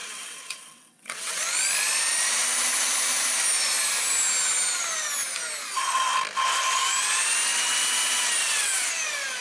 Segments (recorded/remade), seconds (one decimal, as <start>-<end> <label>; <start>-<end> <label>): 0.0-1.4 remade; 1.4-8.4 recorded; 8.4-8.9 remade; 8.9-9.4 recorded